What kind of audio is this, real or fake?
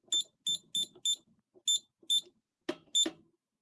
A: real